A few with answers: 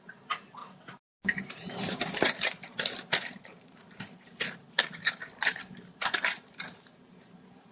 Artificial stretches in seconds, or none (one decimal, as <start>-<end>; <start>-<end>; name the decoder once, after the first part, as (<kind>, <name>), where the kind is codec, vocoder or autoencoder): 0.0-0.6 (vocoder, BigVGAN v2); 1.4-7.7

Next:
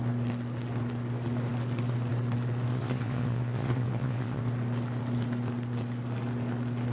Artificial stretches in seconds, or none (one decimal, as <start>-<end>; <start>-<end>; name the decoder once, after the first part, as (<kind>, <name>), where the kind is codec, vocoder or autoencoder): 2.7-4.4 (vocoder, WaveNeXt)

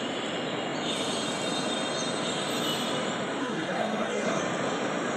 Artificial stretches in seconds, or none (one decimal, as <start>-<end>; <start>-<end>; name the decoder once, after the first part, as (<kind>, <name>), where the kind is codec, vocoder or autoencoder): 3.4-4.4 (codec, SNAC)